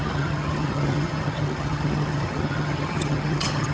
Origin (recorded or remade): remade